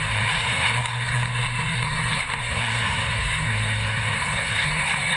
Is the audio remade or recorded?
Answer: remade